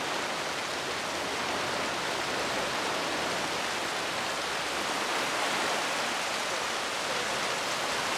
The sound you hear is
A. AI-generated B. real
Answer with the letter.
B